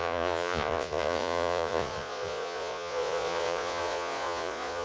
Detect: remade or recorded remade